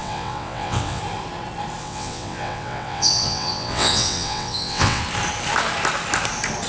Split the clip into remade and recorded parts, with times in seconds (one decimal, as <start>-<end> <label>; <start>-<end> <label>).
0.0-1.0 remade; 1.0-1.8 recorded; 1.8-5.0 remade; 5.0-6.7 recorded